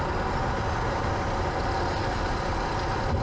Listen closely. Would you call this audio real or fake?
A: real